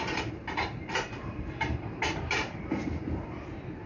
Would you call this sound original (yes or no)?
no